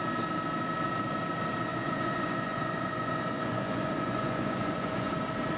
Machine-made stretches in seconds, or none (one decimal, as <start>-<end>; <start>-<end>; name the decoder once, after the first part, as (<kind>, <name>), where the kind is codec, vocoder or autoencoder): 1.7-5.1 (vocoder, Vocos)